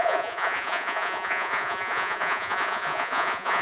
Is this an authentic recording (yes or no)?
no